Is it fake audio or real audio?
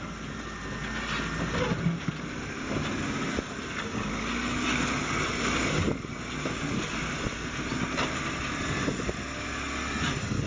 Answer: real